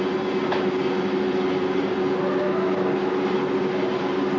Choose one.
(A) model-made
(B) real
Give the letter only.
B